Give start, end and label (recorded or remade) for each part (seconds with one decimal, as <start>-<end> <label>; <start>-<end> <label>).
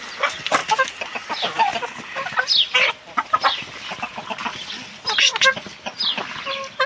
0.0-6.9 recorded